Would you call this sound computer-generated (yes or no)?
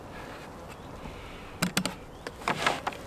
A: no